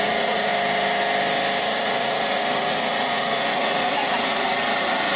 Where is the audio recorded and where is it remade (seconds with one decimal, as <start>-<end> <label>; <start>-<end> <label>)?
0.0-0.5 remade; 0.5-1.6 recorded; 1.6-5.2 remade